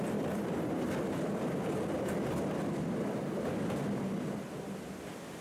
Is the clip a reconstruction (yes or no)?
yes